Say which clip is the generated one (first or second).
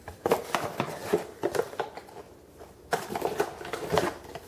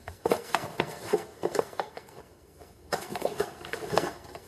second